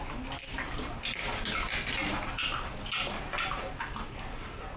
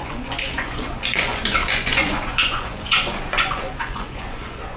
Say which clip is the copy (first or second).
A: second